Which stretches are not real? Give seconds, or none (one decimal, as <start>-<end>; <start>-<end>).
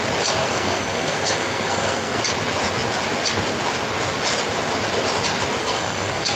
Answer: 0.4-2.2; 5.6-6.4